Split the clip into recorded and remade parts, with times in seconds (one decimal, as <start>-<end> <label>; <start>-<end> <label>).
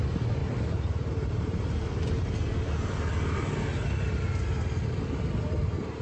0.0-0.4 recorded; 0.4-2.3 remade; 2.3-6.0 recorded